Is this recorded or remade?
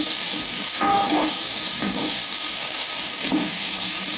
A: remade